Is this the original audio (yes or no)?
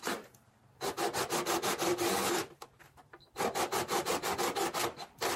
yes